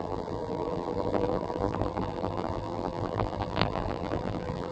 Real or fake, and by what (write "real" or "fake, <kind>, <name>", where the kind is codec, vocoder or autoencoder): fake, vocoder, BigVGAN v2